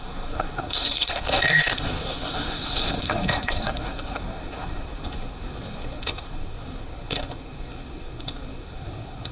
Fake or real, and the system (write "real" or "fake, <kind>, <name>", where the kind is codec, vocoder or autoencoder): fake, codec, SNAC